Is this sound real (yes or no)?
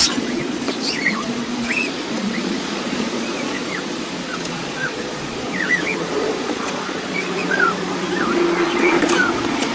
no